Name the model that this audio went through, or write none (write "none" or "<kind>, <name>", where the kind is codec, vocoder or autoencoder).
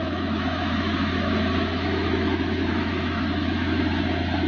autoencoder, DAC-VAE